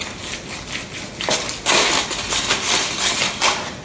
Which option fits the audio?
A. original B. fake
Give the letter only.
A